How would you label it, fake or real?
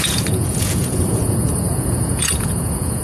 fake